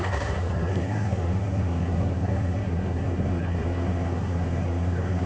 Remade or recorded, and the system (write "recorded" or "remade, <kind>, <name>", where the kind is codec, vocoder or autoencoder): remade, codec, SNAC